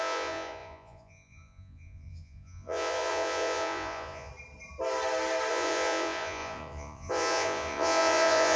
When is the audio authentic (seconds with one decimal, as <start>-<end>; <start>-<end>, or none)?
4.3-5.5